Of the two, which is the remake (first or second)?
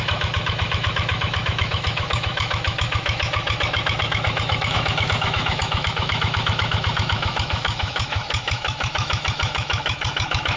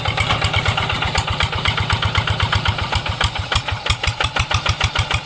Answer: first